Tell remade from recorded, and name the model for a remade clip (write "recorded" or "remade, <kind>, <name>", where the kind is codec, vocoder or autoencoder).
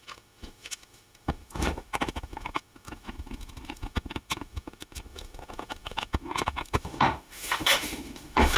remade, autoencoder, DAC-VAE